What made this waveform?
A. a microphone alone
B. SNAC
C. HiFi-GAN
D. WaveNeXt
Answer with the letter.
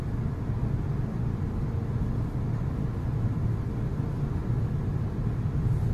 A